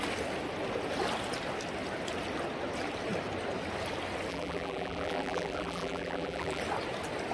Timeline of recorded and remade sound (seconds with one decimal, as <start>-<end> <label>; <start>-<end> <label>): 0.0-4.3 recorded; 4.3-6.6 remade; 6.6-7.3 recorded